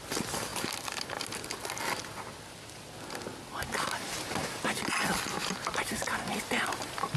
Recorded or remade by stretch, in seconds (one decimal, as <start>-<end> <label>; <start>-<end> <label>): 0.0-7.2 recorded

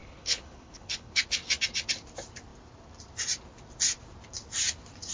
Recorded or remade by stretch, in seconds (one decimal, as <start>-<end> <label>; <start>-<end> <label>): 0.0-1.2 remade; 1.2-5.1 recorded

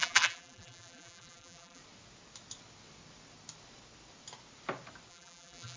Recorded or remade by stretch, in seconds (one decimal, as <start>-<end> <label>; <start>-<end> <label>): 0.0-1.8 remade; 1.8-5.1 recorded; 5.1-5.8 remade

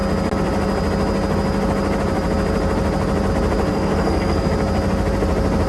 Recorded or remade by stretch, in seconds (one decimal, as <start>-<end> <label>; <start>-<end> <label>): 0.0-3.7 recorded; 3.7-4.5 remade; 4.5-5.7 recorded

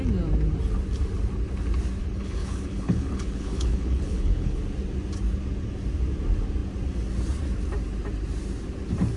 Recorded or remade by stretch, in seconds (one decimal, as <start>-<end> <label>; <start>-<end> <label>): 0.0-2.0 recorded; 2.0-4.6 remade; 4.6-9.2 recorded